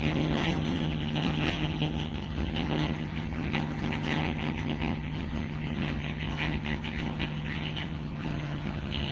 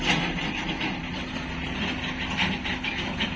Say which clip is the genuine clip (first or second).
second